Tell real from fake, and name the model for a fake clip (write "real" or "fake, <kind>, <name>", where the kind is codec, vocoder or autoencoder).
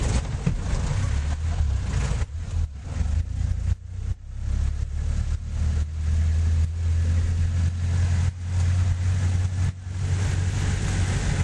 real